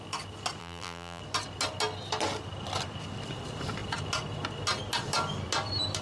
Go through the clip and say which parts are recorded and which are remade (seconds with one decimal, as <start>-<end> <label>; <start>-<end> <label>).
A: 0.0-0.6 recorded; 0.6-1.2 remade; 1.2-6.0 recorded